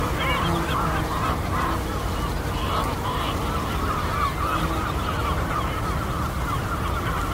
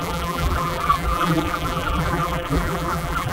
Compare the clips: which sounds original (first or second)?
first